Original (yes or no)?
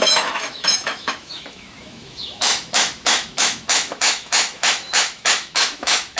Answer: no